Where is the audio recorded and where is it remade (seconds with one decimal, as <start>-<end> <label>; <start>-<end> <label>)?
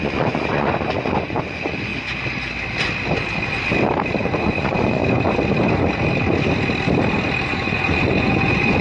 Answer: 0.0-1.9 remade; 1.9-4.2 recorded; 4.2-5.0 remade; 5.0-7.5 recorded; 7.5-8.8 remade